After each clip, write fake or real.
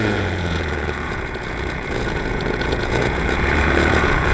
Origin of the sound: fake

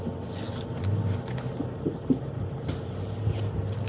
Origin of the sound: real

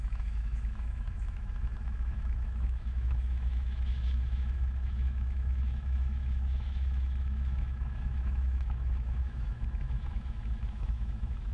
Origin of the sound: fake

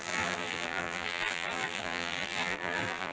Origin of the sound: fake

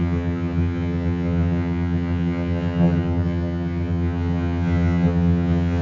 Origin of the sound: fake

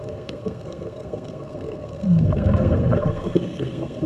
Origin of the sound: fake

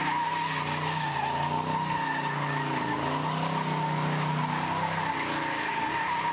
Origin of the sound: real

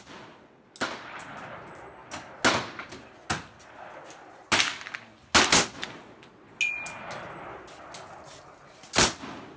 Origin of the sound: real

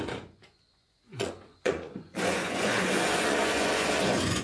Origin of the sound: fake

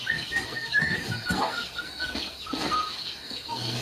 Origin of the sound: fake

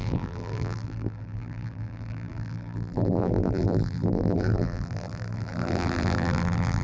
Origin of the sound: fake